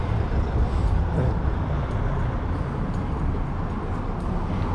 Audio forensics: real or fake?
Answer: real